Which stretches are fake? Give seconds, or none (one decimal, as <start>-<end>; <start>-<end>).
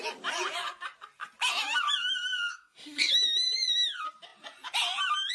2.5-3.1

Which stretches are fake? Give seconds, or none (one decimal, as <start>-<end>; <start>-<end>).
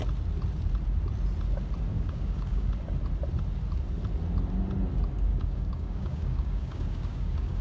1.9-2.7; 5.3-7.6